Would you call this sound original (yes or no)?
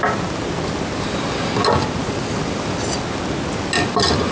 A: yes